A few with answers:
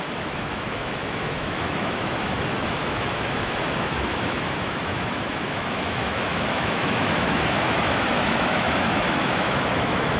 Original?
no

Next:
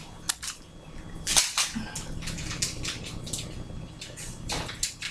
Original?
yes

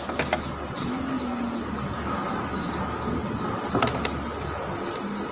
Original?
yes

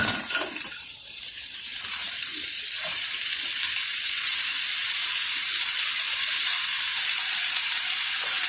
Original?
no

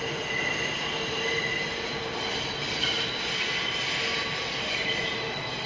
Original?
yes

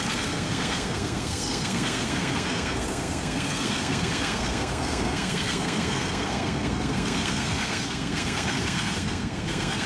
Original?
no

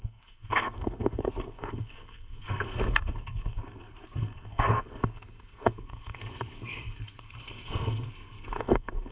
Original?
no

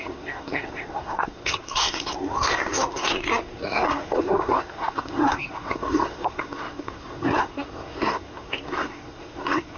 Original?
no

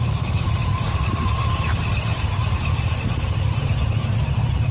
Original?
no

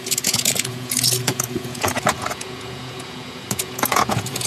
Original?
no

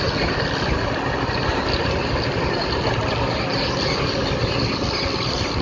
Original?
yes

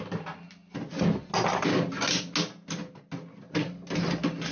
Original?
yes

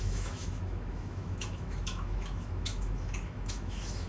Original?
no